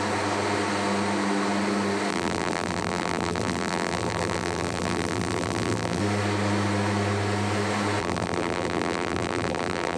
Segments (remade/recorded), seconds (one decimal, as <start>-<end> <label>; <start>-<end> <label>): 0.0-2.1 recorded; 2.1-6.0 remade; 6.0-8.0 recorded; 8.0-10.0 remade